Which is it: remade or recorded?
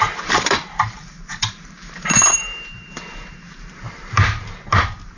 remade